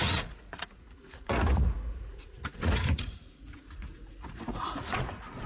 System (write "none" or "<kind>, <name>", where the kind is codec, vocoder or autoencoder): vocoder, Vocos